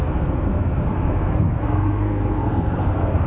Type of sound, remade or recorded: remade